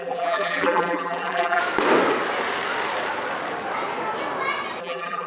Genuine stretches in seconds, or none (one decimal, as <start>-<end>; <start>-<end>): 1.6-4.8